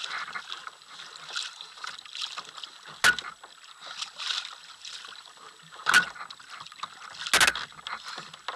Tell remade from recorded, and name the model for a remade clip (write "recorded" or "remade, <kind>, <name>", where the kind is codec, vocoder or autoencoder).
recorded